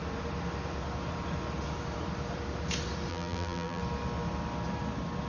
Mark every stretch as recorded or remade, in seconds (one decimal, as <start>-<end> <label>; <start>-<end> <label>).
0.0-3.1 recorded; 3.1-3.8 remade; 3.8-5.3 recorded